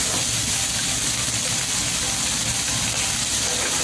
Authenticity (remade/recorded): recorded